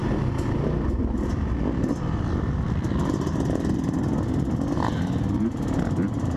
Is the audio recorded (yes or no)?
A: yes